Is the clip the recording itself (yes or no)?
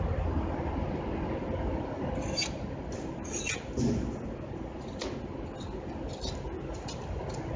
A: yes